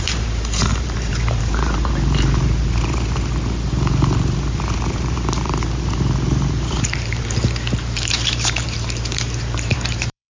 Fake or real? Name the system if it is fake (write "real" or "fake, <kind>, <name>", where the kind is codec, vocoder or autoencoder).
fake, vocoder, BigVGAN v2